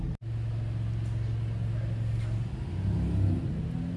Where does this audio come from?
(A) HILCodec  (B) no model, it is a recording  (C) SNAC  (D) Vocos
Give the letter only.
B